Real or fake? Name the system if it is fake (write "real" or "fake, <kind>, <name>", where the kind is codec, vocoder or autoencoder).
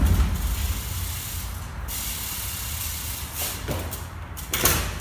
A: real